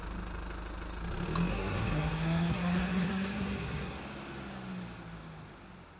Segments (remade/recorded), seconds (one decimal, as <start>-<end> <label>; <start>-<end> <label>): 0.0-1.5 recorded; 1.5-4.0 remade; 4.0-6.0 recorded